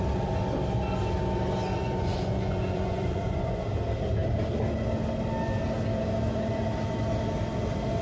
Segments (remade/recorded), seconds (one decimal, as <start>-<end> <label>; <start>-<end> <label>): 0.0-1.7 recorded; 1.7-3.6 remade; 3.6-8.0 recorded